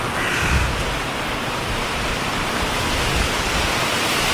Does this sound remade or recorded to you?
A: recorded